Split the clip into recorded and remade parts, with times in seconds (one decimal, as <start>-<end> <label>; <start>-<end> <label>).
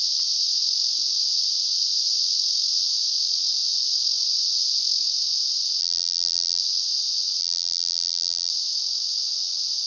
0.0-5.8 recorded; 5.8-6.6 remade; 6.6-7.4 recorded; 7.4-8.5 remade; 8.5-9.9 recorded